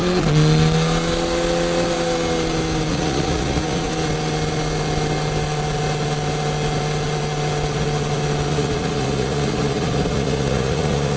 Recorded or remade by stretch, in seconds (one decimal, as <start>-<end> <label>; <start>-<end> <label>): 0.0-2.9 recorded; 2.9-3.9 remade; 3.9-8.5 recorded; 8.5-11.2 remade